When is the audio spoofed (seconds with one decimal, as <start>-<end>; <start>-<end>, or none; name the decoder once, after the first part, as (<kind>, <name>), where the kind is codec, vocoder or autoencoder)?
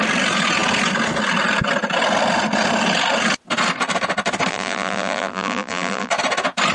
4.5-6.1 (vocoder, BigVGAN v2)